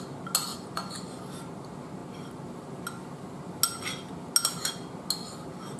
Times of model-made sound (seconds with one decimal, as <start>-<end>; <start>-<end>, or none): 0.5-1.2